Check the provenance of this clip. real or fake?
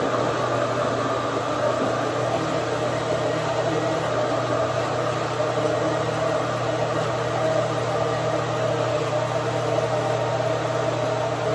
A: real